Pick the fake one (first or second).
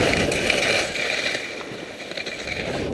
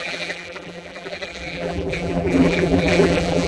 second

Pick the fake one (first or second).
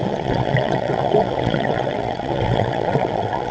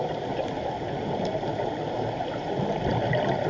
first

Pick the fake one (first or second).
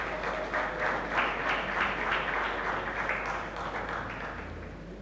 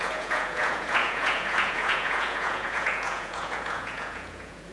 second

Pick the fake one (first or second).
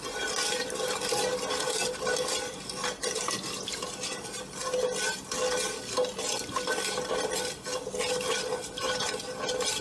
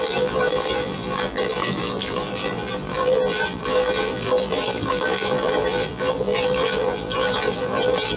second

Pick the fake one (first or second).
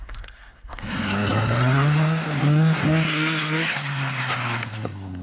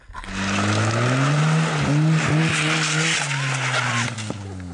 first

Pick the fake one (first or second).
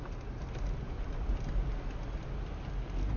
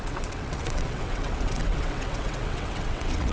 second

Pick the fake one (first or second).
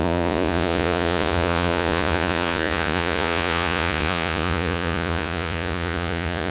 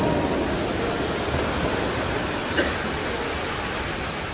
first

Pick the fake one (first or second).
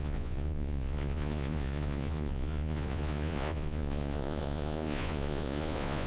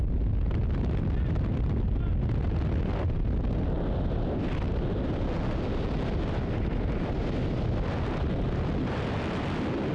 first